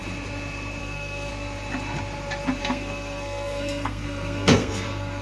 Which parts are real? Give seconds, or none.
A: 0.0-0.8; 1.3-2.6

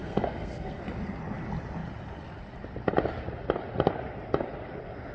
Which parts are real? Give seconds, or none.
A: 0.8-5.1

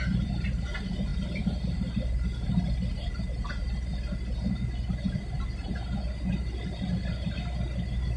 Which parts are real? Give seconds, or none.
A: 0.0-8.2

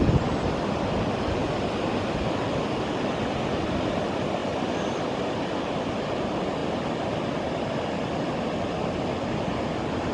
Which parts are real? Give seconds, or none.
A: 0.0-10.1

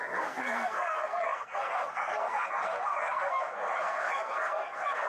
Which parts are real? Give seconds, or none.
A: none